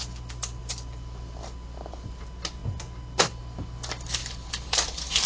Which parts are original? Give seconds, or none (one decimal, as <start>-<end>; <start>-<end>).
0.0-0.6; 2.2-4.2